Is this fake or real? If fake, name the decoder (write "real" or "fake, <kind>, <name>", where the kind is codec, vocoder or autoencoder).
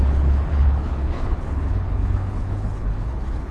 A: fake, codec, HILCodec